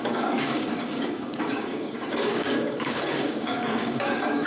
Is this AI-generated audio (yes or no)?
yes